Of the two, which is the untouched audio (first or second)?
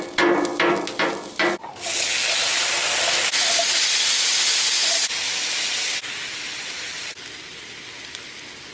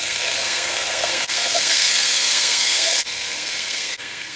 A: first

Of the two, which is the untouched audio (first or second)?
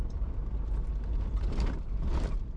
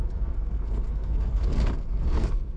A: first